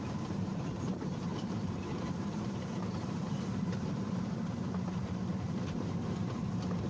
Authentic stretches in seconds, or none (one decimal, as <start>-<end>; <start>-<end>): none